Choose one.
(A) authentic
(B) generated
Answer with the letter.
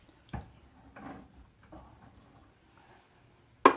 A